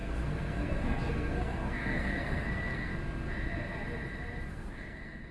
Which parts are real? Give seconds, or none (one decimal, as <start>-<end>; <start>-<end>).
2.9-4.5